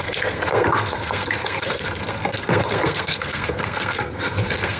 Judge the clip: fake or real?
fake